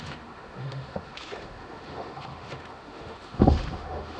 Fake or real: fake